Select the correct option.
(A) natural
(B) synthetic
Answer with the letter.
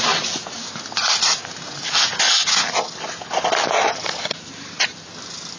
A